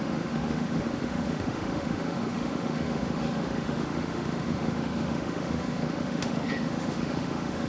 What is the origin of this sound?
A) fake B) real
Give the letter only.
A